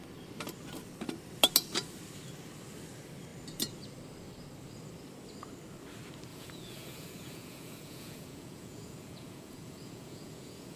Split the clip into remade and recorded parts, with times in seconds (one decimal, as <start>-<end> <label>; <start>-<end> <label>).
0.0-6.3 recorded; 6.3-10.8 remade